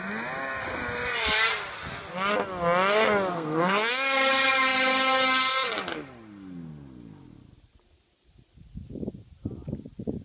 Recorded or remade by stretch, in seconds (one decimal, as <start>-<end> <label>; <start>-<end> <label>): 0.0-3.3 recorded; 3.3-3.9 remade; 3.9-10.2 recorded